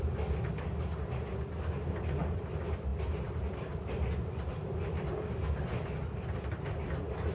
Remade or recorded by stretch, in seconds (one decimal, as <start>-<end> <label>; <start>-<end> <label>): 0.0-7.3 recorded